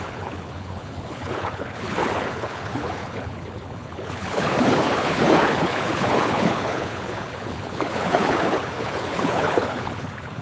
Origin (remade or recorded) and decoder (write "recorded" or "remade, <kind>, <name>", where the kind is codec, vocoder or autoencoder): remade, codec, HILCodec